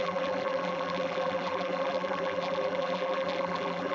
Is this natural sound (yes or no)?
no